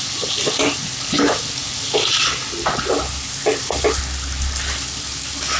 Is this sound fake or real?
real